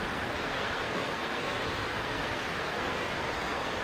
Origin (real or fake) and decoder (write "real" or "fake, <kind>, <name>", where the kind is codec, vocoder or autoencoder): fake, codec, SNAC